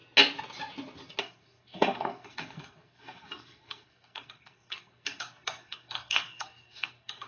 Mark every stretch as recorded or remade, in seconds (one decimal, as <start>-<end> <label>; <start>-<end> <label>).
0.0-1.2 recorded; 1.2-7.3 remade